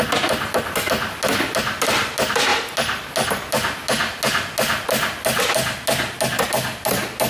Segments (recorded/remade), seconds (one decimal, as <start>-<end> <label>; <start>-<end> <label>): 0.0-7.3 recorded